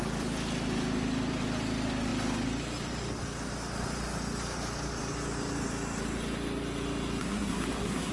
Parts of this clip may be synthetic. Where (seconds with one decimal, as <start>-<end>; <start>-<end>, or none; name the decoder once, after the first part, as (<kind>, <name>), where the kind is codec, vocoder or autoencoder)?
7.2-8.1 (codec, SNAC)